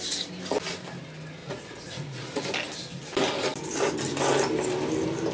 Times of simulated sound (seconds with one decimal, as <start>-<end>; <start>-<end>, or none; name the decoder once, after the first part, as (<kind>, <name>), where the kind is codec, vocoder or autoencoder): 1.4-2.4 (vocoder, Vocos)